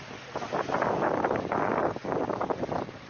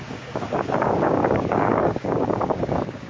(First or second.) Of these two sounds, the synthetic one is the second